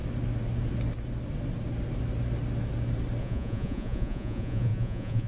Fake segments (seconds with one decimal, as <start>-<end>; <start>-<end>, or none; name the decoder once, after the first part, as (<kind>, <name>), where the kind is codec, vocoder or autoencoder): 3.2-5.3 (vocoder, Vocos)